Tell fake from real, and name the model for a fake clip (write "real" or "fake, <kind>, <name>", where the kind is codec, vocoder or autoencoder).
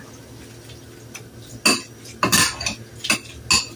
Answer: real